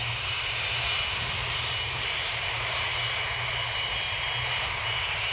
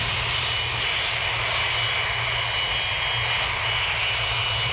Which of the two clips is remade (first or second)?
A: first